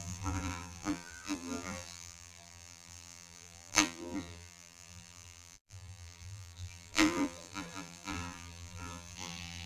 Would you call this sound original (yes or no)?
no